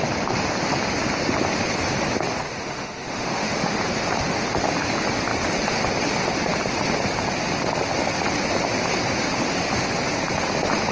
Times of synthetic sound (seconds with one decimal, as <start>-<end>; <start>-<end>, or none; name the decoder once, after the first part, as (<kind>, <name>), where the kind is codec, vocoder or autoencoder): 2.3-3.8 (autoencoder, DAC-VAE)

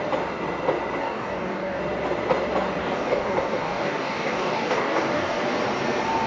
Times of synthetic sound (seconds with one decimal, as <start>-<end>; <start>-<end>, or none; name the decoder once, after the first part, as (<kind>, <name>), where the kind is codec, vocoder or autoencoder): 1.0-1.8 (codec, DAC); 2.8-5.4

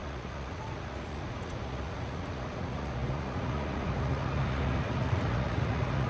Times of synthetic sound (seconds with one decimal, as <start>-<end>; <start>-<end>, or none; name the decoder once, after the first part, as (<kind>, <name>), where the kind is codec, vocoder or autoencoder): 0.0-6.1 (vocoder, Vocos)

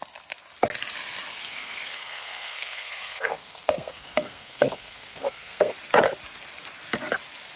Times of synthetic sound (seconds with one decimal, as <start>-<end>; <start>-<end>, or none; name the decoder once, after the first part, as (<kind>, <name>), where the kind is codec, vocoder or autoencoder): 1.3-5.7 (codec, SNAC)

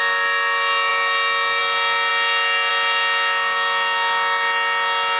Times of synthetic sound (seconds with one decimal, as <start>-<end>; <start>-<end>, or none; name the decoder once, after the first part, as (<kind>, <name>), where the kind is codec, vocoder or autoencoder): none